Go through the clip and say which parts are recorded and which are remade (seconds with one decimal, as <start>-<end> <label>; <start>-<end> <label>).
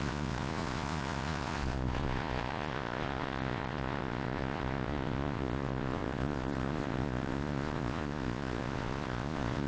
0.0-9.7 remade